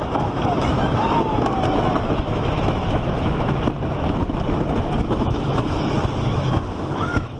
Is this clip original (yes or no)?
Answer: no